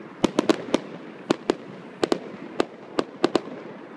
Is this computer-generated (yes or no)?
no